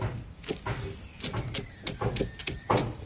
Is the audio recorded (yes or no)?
yes